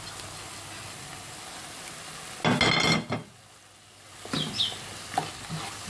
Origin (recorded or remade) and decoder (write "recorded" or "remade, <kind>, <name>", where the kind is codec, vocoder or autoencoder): recorded